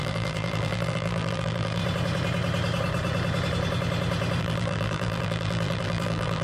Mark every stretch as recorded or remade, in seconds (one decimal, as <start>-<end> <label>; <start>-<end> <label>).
0.0-1.8 remade; 1.8-4.4 recorded; 4.4-6.4 remade

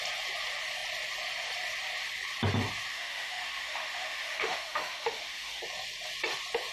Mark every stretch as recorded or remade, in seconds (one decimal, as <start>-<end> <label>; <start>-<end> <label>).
0.0-2.9 recorded; 2.9-5.6 remade; 5.6-6.7 recorded

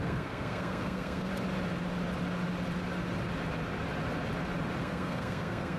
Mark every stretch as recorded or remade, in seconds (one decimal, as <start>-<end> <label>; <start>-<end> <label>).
0.0-1.3 remade; 1.3-4.8 recorded; 4.8-5.8 remade

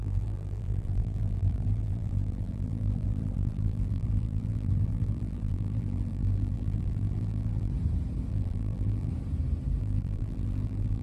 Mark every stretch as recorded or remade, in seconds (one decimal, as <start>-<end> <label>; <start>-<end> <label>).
0.0-7.7 remade; 7.7-8.3 recorded; 8.3-9.1 remade; 9.1-9.8 recorded; 9.8-11.0 remade